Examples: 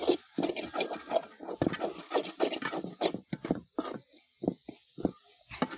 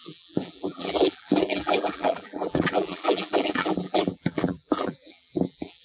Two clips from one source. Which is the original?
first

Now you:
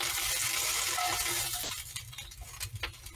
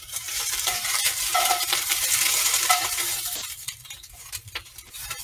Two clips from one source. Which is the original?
first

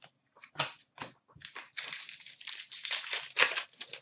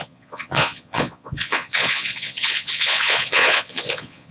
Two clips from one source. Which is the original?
first